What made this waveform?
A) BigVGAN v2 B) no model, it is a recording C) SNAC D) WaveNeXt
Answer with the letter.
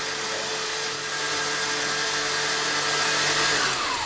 B